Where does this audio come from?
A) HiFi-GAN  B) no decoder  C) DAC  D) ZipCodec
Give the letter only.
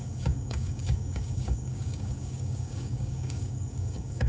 C